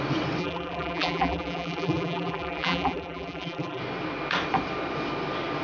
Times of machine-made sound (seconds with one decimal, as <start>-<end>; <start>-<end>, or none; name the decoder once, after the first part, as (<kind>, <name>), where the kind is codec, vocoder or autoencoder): 0.4-3.8 (vocoder, BigVGAN v2)